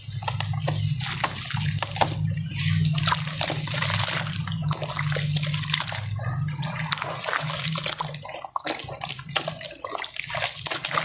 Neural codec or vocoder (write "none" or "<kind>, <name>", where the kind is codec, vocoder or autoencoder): none